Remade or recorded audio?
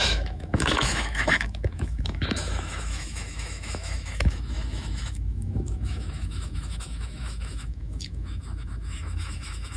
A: remade